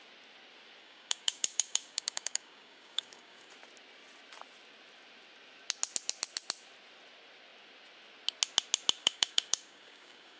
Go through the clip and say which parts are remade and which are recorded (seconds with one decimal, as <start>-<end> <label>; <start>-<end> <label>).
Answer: 0.0-0.8 recorded; 0.8-3.5 remade; 3.5-9.0 recorded; 9.0-10.4 remade